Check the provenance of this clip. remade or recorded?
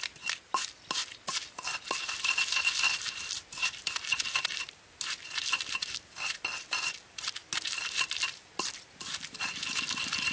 recorded